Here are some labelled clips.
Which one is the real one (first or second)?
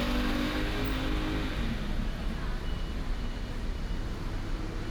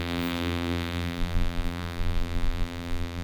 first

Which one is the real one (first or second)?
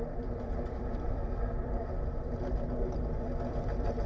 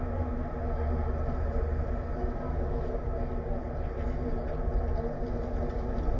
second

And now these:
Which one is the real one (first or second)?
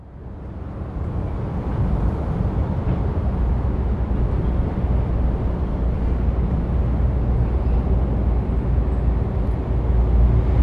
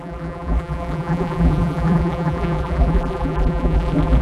first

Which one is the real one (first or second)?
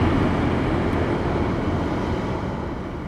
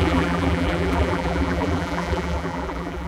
first